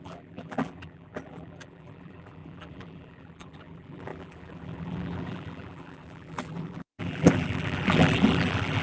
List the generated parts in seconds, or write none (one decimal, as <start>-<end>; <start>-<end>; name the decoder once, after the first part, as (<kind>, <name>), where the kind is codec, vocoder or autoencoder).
0.0-8.8 (vocoder, BigVGAN v2)